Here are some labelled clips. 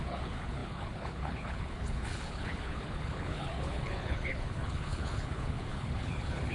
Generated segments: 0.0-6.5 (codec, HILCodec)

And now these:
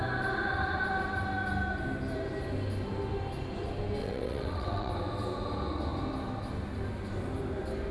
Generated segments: 4.0-4.9 (vocoder, WaveNeXt)

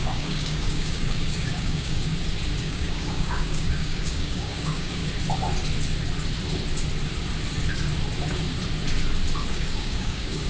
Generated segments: 0.0-2.1 (codec, DAC); 2.6-5.0; 9.5-10.5

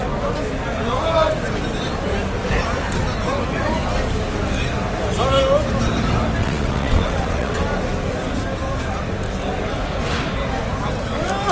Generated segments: 6.4-7.6 (vocoder, WaveNeXt)

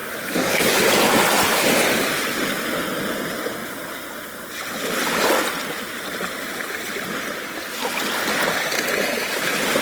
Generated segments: 0.0-0.7 (codec, DAC)